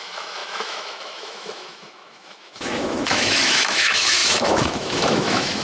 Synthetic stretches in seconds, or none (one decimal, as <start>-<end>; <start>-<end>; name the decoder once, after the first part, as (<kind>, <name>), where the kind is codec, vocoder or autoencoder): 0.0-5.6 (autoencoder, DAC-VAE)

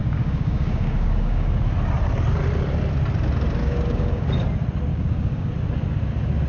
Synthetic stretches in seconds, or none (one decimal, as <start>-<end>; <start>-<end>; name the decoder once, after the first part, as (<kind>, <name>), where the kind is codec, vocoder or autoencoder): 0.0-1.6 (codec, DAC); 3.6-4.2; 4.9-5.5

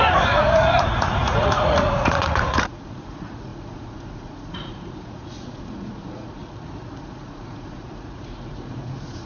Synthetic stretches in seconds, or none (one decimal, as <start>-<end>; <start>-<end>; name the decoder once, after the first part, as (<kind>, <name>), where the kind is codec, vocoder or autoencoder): 0.0-6.4 (vocoder, Vocos); 7.0-9.3